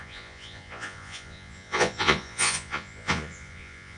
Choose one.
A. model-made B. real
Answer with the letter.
A